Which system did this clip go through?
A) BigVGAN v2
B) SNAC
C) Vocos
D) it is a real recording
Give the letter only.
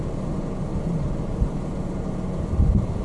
D